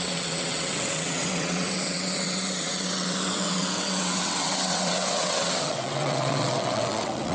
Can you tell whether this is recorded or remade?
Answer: remade